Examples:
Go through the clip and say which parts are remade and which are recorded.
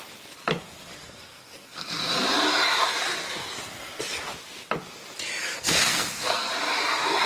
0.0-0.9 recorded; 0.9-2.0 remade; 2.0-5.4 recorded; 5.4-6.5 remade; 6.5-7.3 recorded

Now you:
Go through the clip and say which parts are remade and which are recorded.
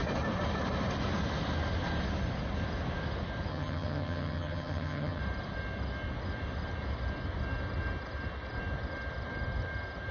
0.0-3.5 recorded; 3.5-5.2 remade; 5.2-10.1 recorded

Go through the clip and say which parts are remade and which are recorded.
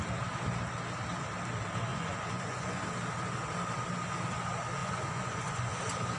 0.0-1.9 recorded; 1.9-2.8 remade; 2.8-4.8 recorded; 4.8-5.8 remade; 5.8-6.2 recorded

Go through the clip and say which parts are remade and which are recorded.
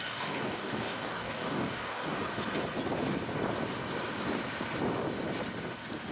0.0-2.2 remade; 2.2-6.1 recorded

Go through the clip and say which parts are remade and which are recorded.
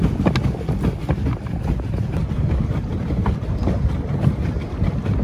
0.0-5.2 recorded